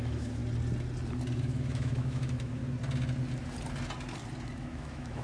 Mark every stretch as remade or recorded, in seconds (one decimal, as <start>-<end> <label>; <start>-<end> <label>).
0.0-0.4 remade; 0.4-1.4 recorded; 1.4-2.6 remade; 2.6-4.6 recorded; 4.6-5.2 remade